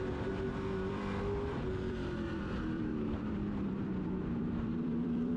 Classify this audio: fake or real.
fake